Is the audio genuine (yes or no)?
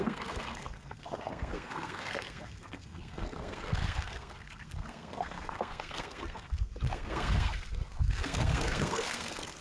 no